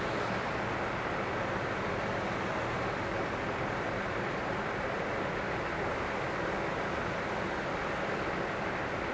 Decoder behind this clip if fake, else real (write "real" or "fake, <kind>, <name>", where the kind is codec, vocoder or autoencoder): real